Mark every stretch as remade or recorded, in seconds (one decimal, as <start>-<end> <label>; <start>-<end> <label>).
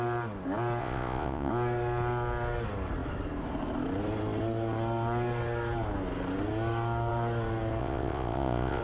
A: 0.0-0.8 recorded; 0.8-1.5 remade; 1.5-7.8 recorded; 7.8-8.8 remade